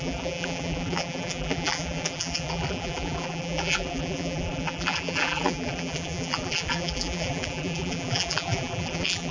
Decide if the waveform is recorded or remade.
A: remade